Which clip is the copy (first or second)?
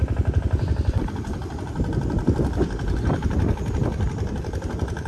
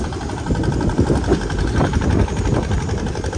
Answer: first